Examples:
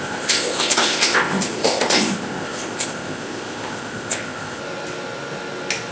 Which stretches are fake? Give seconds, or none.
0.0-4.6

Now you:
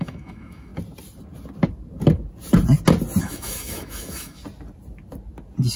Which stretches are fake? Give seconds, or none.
0.0-0.7; 3.2-4.4

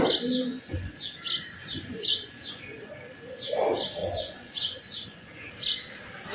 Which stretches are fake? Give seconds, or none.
0.5-1.1; 1.6-2.9; 4.0-5.5

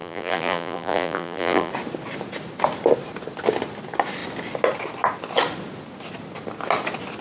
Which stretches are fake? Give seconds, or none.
0.0-1.7